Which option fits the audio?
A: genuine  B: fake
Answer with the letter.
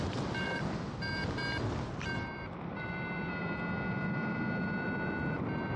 A